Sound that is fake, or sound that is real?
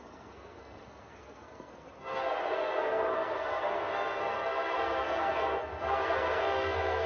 fake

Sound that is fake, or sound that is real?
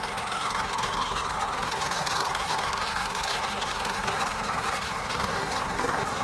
fake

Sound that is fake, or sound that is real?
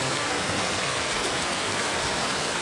fake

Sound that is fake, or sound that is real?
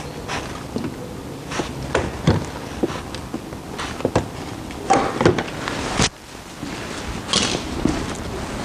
real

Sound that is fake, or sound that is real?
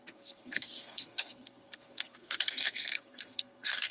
fake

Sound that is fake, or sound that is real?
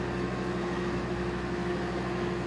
fake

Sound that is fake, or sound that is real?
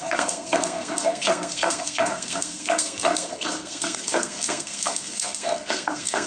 fake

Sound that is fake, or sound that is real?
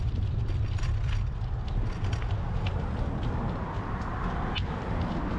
real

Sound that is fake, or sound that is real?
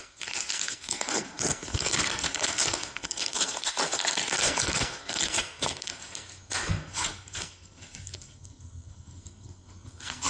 fake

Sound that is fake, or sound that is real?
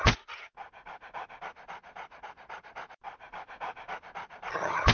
real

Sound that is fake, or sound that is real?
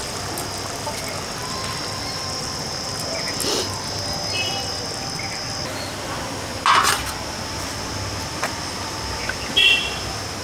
real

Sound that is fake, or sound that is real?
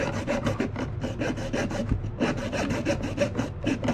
real